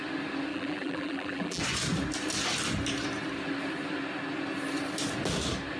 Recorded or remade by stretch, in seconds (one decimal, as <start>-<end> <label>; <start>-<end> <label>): 0.0-0.5 recorded; 0.5-1.6 remade; 1.6-5.8 recorded